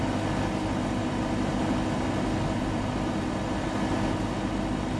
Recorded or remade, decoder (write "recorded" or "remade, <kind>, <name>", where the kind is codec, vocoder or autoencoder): recorded